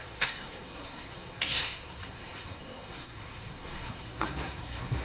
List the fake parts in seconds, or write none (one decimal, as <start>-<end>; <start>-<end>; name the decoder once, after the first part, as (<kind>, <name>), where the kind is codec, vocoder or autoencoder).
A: 0.0-5.0 (codec, SNAC)